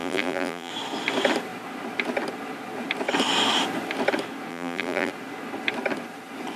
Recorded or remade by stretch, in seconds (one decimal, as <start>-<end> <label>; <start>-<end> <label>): 0.0-0.7 remade; 0.7-4.5 recorded; 4.5-5.1 remade; 5.1-6.6 recorded